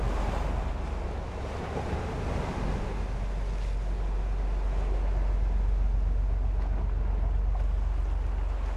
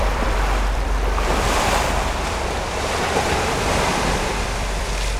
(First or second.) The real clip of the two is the first